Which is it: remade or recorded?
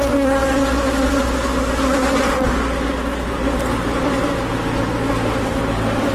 recorded